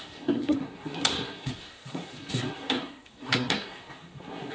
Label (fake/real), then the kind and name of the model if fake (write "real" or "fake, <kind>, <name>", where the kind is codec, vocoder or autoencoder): fake, codec, SNAC